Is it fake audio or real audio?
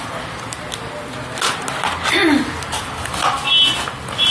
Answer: real